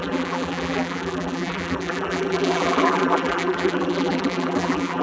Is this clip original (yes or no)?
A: no